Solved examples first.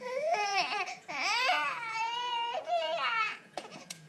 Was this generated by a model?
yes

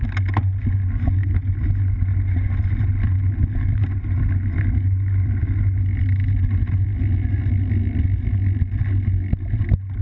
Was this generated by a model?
no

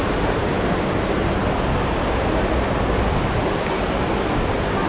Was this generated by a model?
no